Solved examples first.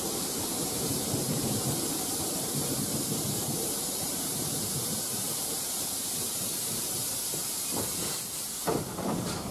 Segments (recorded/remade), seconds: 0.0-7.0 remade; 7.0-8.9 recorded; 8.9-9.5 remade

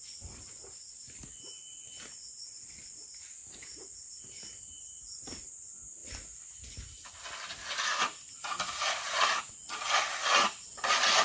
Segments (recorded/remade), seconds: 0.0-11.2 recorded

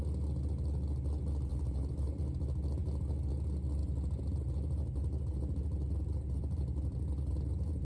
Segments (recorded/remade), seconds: 0.0-1.5 recorded; 1.5-2.1 remade; 2.1-3.8 recorded; 3.8-7.8 remade

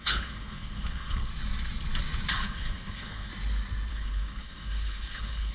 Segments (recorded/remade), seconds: 0.0-1.3 remade; 1.3-2.3 recorded; 2.3-3.3 remade; 3.3-3.9 recorded; 3.9-5.5 remade

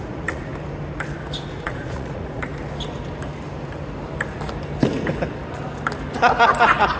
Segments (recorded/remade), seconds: 0.0-0.5 remade; 0.5-1.5 recorded; 1.5-2.5 remade; 2.5-7.0 recorded